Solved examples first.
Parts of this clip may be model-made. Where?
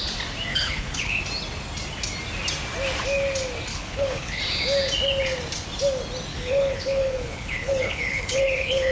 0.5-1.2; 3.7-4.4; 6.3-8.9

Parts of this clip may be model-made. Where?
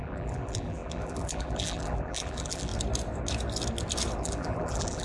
0.0-2.7; 4.2-5.0